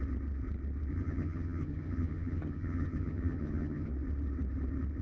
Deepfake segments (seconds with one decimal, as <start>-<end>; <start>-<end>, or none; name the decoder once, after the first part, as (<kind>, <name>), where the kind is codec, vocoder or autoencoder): 0.9-3.9 (vocoder, HiFi-GAN)